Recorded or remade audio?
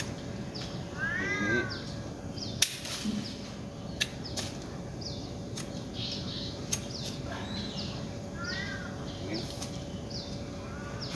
recorded